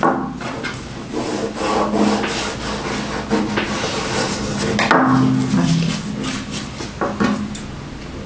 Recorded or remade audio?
recorded